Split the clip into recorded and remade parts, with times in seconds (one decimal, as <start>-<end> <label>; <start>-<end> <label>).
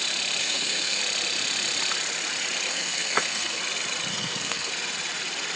0.0-0.4 recorded; 0.4-1.0 remade; 1.0-2.7 recorded; 2.7-3.6 remade; 3.6-4.1 recorded; 4.1-4.7 remade; 4.7-5.6 recorded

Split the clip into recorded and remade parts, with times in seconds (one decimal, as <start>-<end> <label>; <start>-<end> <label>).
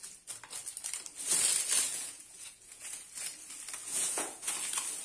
0.0-1.9 recorded; 1.9-3.1 remade; 3.1-3.8 recorded; 3.8-4.5 remade; 4.5-5.0 recorded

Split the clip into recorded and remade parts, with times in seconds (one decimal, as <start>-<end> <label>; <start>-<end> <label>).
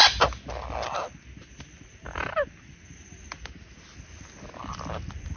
0.0-5.4 recorded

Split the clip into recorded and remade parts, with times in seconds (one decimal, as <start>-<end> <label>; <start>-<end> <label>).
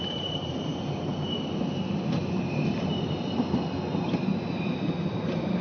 0.0-0.7 remade; 0.7-4.1 recorded; 4.1-5.6 remade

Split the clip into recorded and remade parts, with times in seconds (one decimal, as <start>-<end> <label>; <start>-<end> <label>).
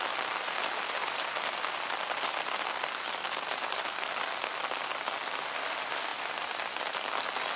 0.0-7.6 recorded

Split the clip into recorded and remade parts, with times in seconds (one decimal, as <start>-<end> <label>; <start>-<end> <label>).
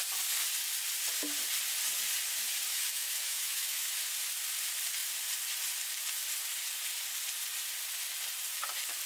0.0-2.7 recorded; 2.7-3.9 remade; 3.9-9.1 recorded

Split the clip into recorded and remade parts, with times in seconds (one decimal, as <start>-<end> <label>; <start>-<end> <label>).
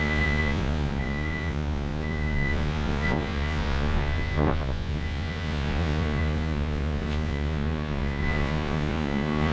0.0-9.5 remade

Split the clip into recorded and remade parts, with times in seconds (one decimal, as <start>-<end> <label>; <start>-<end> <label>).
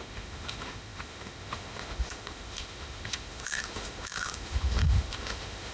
0.0-5.7 remade